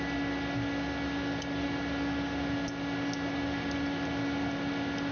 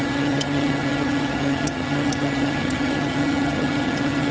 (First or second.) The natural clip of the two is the first